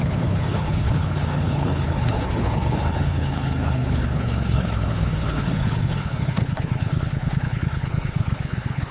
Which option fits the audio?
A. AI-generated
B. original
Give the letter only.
A